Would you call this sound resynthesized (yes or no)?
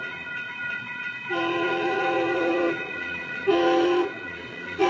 yes